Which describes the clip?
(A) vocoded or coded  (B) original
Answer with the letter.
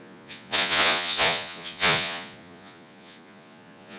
A